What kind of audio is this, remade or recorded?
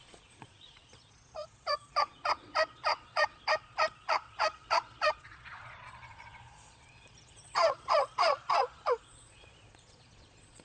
remade